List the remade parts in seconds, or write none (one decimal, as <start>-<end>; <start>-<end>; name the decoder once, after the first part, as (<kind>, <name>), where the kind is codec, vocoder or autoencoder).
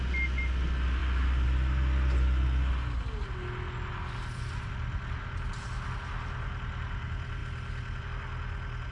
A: none